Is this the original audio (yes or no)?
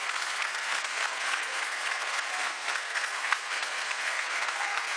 no